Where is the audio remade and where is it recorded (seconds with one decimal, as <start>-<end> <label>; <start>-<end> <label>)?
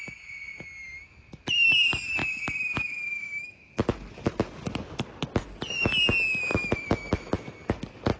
0.0-2.2 recorded; 2.2-3.7 remade; 3.7-6.5 recorded; 6.5-7.3 remade; 7.3-8.2 recorded